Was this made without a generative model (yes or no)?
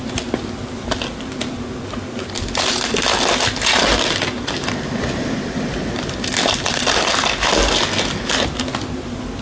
yes